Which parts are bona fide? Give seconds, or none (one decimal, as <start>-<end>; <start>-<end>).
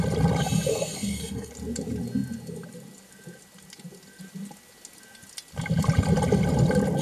0.0-0.7; 1.5-7.0